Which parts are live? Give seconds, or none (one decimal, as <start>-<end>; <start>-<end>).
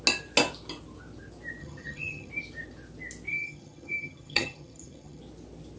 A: 0.0-1.6; 2.3-3.3; 5.2-5.8